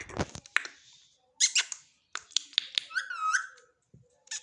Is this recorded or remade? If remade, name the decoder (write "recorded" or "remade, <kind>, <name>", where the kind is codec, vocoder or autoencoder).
recorded